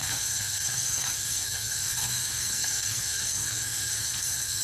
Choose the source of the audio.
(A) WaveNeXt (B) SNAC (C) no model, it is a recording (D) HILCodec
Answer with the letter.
B